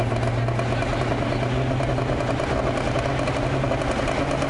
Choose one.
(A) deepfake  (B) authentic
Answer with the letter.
B